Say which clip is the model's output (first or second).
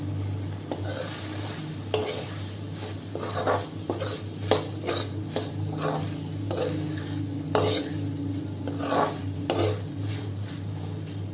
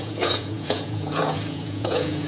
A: second